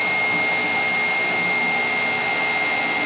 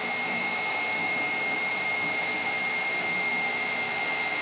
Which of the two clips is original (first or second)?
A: first